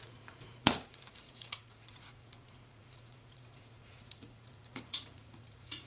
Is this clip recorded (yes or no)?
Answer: no